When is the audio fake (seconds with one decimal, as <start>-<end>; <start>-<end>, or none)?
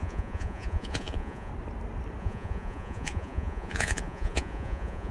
0.0-1.5; 2.2-5.1